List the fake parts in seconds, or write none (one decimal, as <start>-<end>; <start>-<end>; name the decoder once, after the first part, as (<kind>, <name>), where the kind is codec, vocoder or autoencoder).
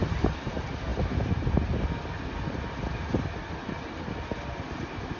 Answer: none